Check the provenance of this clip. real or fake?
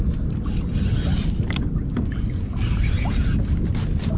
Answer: real